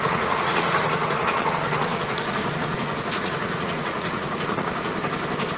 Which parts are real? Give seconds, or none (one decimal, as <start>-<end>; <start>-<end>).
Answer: 4.9-5.6